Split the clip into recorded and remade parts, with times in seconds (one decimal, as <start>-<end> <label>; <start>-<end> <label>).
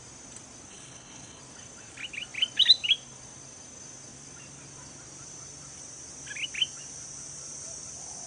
0.0-0.7 recorded; 0.7-1.4 remade; 1.4-8.3 recorded